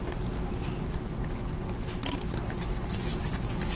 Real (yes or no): yes